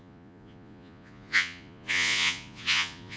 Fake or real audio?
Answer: fake